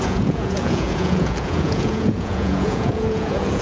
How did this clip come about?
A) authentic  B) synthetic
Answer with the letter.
B